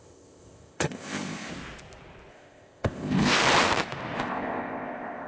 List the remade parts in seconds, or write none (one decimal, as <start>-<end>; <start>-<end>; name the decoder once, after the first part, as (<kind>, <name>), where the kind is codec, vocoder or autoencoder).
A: 0.0-1.5 (codec, ZipCodec); 2.3-3.4; 4.2-5.3